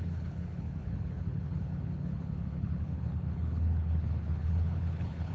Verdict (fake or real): fake